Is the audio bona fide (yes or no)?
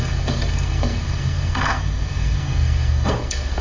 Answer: no